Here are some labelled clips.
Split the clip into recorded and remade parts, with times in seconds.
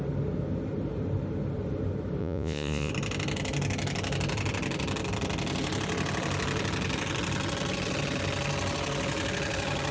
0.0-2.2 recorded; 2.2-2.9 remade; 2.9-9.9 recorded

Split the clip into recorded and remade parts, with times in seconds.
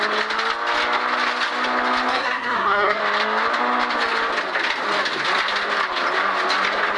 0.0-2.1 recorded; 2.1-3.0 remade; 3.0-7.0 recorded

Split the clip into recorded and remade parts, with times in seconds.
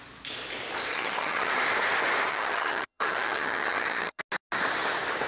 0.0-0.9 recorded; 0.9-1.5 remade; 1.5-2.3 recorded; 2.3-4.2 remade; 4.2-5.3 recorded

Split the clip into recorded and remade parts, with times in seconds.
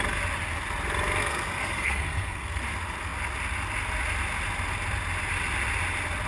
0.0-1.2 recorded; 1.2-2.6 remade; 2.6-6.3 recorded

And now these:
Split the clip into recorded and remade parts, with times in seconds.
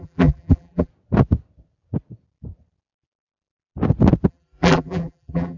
0.0-0.9 remade; 0.9-4.3 recorded; 4.3-5.6 remade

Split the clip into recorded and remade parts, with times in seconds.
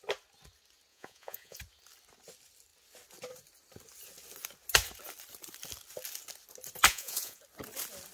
0.0-0.9 recorded; 0.9-1.6 remade; 1.6-6.9 recorded; 6.9-7.4 remade; 7.4-8.1 recorded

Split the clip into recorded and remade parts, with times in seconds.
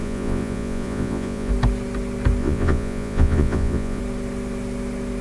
0.0-1.5 remade; 1.5-2.4 recorded; 2.4-4.0 remade; 4.0-5.2 recorded